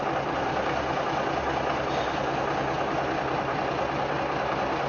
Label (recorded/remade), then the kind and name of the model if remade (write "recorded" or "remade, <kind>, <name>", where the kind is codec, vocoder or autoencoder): recorded